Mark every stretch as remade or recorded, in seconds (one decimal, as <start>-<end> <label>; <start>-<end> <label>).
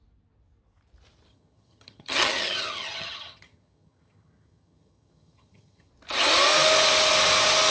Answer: 0.0-1.3 recorded; 1.3-5.9 remade; 5.9-7.7 recorded